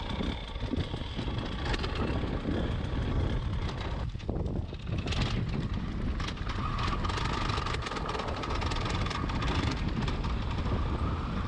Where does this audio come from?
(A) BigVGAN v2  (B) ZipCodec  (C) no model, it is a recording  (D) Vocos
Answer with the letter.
C